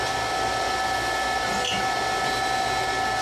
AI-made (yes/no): no